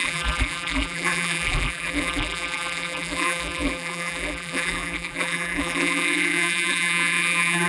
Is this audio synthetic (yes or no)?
yes